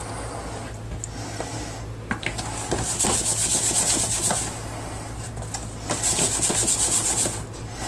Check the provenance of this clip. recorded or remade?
recorded